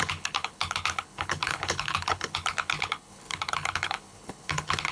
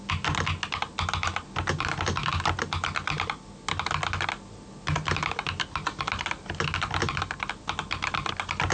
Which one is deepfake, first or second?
first